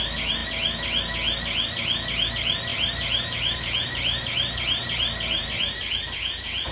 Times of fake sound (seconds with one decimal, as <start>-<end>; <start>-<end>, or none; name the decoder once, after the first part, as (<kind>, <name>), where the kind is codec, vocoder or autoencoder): 2.7-5.5 (vocoder, BigVGAN v2)